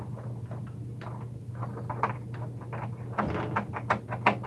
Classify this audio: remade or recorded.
recorded